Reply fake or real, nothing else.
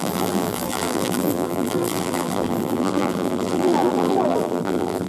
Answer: fake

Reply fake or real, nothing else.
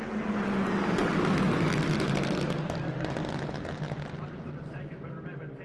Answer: real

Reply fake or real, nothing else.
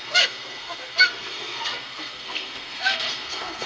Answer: fake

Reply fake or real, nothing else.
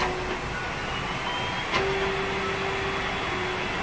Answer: real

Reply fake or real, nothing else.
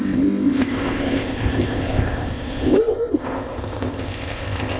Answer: fake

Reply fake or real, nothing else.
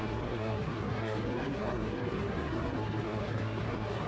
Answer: fake